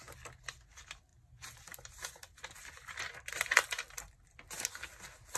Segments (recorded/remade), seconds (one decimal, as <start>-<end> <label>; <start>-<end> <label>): 0.0-5.4 recorded